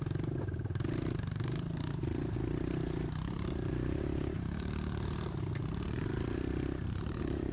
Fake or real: fake